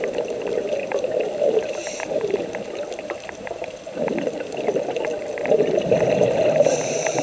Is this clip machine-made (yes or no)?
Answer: yes